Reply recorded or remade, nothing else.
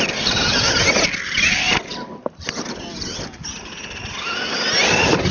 recorded